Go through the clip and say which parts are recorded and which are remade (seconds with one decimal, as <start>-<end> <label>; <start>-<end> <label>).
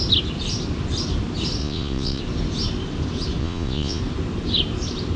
0.0-1.6 recorded; 1.6-2.2 remade; 2.2-3.4 recorded; 3.4-4.0 remade; 4.0-5.2 recorded